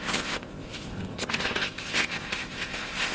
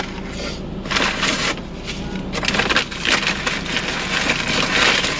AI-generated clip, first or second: first